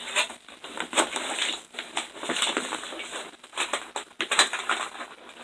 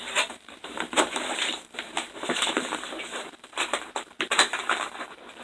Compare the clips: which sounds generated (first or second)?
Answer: second